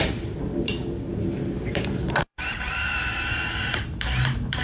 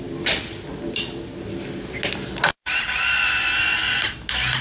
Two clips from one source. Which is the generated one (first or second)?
first